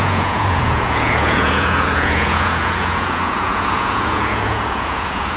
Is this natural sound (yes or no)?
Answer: no